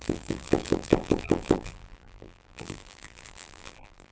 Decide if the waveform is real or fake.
fake